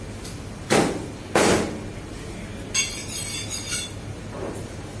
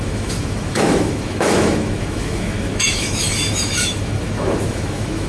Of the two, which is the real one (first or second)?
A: first